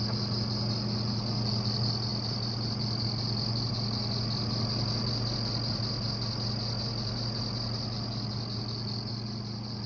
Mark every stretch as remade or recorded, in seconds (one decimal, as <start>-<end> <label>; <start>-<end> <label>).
0.0-9.9 recorded